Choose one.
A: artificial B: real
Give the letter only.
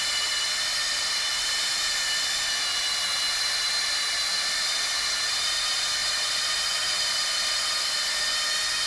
A